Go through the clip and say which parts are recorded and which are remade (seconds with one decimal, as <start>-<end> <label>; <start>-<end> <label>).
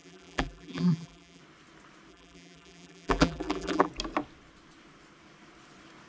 0.0-1.4 remade; 1.4-2.1 recorded; 2.1-3.9 remade; 3.9-6.1 recorded